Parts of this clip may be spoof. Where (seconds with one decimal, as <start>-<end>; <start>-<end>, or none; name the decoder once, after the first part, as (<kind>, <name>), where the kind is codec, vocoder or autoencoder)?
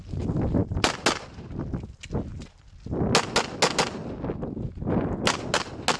none